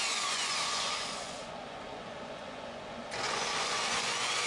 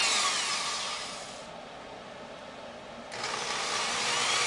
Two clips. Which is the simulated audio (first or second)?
first